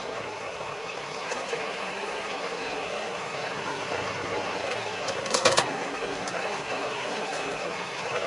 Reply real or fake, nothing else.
fake